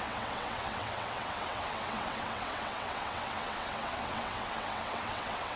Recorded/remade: remade